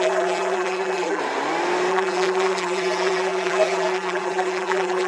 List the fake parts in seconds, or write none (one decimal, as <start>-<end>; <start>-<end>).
0.0-1.2; 1.9-5.1